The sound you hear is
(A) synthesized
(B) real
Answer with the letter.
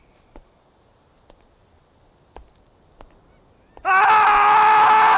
B